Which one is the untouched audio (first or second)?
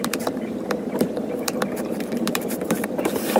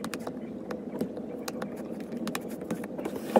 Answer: second